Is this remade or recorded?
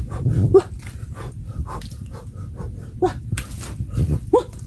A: recorded